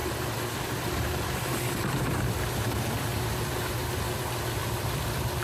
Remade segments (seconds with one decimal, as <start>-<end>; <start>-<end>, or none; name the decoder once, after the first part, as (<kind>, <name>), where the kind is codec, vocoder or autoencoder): 0.0-3.2 (vocoder, BigVGAN v2); 4.6-5.4